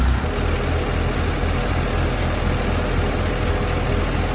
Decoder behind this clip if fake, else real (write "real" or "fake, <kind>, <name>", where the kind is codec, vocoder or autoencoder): real